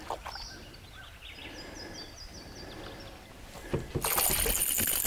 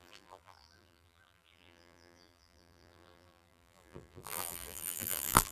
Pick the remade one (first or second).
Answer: second